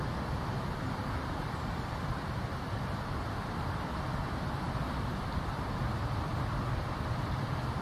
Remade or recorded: remade